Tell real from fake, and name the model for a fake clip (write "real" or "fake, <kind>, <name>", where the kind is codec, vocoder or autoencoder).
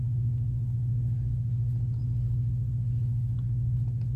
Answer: real